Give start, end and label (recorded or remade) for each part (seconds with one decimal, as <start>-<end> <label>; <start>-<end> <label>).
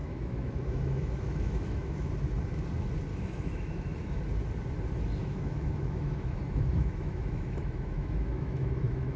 0.0-2.1 remade; 2.1-3.1 recorded; 3.1-4.2 remade; 4.2-5.2 recorded; 5.2-9.2 remade